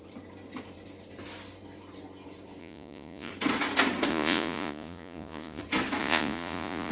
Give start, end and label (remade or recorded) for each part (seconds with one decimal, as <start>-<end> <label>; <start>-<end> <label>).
0.0-2.6 recorded; 2.6-3.3 remade; 3.3-4.1 recorded; 4.1-5.6 remade; 5.6-6.0 recorded; 6.0-6.9 remade